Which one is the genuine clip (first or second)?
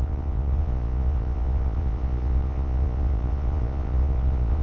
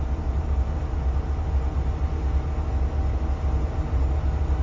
second